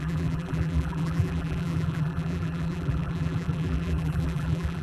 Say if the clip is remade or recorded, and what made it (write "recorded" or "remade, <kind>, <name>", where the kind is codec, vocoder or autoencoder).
remade, vocoder, BigVGAN v2